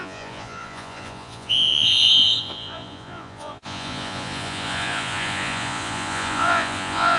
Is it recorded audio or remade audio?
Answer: remade